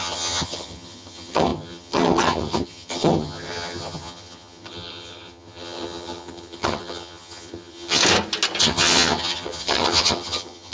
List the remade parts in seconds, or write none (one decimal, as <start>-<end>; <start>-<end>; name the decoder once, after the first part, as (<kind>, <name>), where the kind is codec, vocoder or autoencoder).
0.0-8.0 (vocoder, HiFi-GAN); 8.6-10.7